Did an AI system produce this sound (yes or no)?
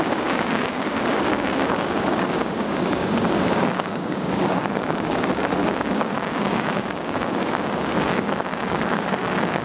yes